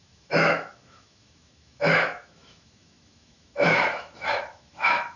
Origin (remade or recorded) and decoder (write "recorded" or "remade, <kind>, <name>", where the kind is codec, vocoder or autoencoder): remade, autoencoder, DAC-VAE